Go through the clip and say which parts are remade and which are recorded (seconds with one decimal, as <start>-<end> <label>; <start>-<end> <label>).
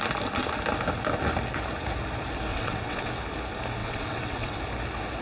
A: 0.0-2.5 recorded; 2.5-3.1 remade; 3.1-3.8 recorded; 3.8-4.6 remade; 4.6-5.2 recorded